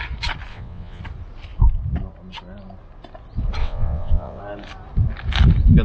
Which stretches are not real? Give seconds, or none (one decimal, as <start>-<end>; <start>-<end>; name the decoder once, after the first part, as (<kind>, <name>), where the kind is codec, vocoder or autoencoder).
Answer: 0.5-1.0 (vocoder, WaveNeXt); 3.6-4.4